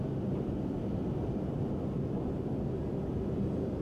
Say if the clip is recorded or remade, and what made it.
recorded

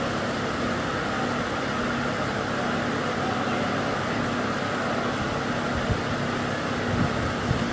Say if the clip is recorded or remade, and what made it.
recorded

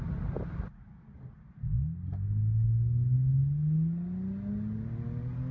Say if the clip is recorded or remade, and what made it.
recorded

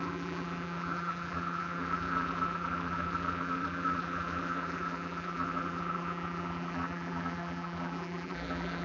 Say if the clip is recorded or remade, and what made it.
remade, vocoder, BigVGAN v2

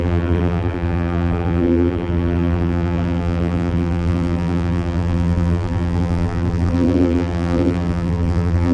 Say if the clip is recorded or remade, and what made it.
remade, vocoder, BigVGAN v2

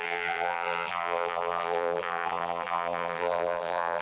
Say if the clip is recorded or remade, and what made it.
remade, vocoder, BigVGAN v2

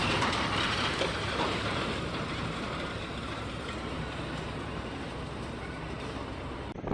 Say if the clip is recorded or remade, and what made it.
remade, vocoder, BigVGAN v2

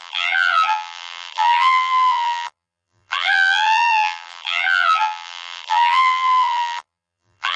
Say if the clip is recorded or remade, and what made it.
remade, vocoder, BigVGAN v2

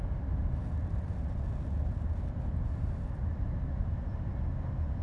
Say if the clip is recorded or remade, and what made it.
recorded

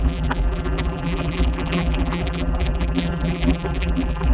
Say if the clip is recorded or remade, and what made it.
remade, vocoder, BigVGAN v2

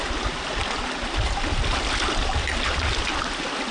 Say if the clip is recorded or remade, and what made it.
recorded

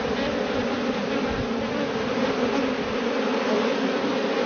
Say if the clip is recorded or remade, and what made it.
recorded